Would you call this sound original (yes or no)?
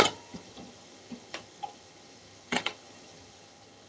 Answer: no